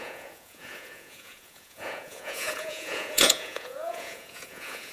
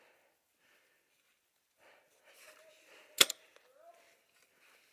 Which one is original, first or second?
second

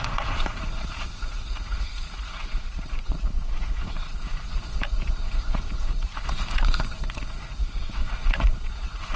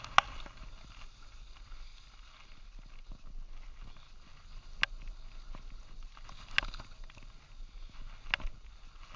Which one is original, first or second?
second